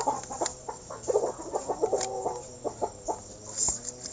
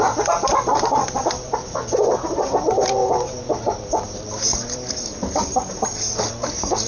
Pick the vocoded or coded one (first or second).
second